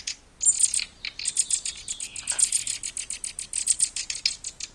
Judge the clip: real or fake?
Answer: real